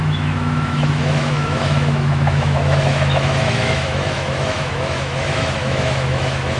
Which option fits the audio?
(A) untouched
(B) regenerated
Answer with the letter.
B